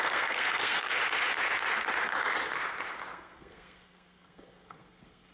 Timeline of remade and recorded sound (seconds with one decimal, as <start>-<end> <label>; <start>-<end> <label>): 0.0-1.0 remade; 1.0-3.1 recorded; 3.1-5.3 remade